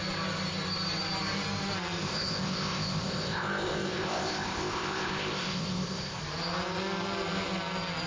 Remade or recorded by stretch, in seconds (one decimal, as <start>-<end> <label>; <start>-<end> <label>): 0.0-2.0 recorded; 2.0-6.2 remade; 6.2-8.1 recorded